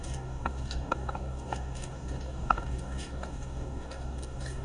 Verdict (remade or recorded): remade